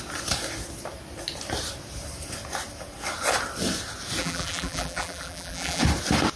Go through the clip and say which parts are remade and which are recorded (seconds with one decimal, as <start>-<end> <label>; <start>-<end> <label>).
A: 0.0-4.2 recorded; 4.2-5.8 remade; 5.8-6.4 recorded